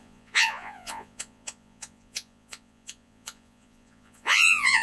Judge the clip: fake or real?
fake